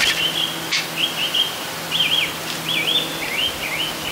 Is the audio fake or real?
real